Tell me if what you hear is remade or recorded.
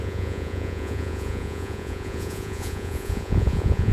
remade